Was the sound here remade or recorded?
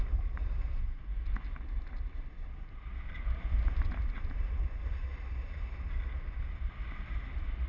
recorded